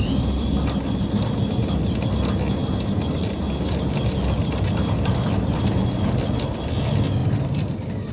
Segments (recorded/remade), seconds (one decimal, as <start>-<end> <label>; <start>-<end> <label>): 0.0-8.1 recorded